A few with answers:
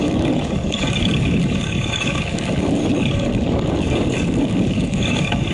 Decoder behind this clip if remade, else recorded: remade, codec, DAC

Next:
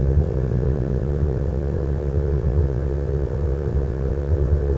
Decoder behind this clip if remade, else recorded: remade, vocoder, WaveNeXt